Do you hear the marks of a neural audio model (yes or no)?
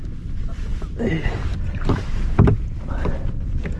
no